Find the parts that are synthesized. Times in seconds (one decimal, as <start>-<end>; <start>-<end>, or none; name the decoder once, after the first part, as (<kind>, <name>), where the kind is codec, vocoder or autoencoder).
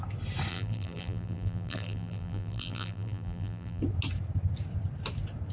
0.5-3.8 (vocoder, BigVGAN v2)